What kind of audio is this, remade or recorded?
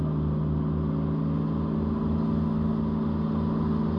recorded